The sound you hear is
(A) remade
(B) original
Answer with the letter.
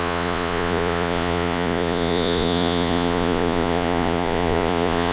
A